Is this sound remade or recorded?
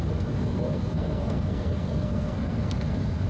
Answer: remade